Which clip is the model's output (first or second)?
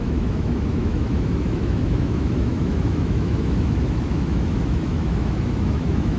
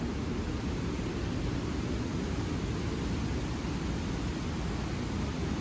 first